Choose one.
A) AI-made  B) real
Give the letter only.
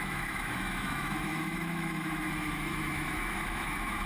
A